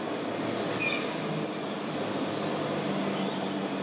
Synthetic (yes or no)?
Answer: no